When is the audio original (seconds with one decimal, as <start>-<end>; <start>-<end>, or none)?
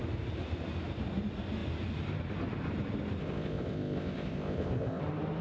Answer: 0.0-3.2; 5.0-5.4